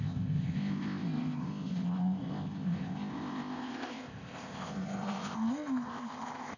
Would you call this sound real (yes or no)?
no